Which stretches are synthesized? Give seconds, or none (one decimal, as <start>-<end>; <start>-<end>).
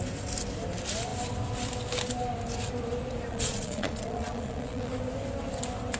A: 3.3-4.9